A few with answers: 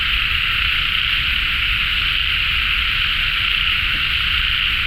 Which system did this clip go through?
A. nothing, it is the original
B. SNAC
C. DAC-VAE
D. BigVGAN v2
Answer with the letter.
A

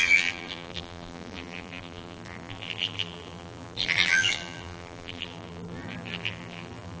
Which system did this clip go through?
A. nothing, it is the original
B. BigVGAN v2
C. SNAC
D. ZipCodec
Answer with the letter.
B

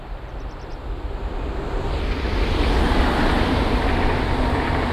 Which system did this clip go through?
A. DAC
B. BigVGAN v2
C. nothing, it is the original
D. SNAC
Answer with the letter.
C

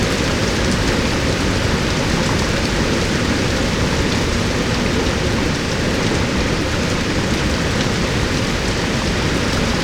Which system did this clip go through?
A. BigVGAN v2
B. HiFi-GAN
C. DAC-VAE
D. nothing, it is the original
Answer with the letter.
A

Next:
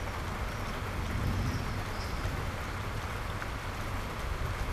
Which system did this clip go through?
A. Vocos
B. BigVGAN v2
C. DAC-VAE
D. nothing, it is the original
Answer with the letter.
D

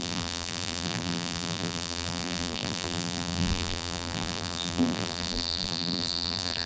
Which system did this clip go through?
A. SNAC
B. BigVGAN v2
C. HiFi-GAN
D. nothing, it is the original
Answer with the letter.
B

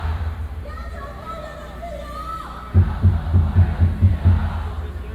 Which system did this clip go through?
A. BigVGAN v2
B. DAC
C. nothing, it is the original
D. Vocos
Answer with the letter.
C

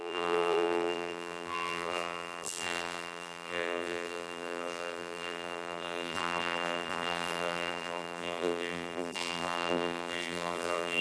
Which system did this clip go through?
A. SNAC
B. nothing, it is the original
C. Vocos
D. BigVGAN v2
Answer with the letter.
D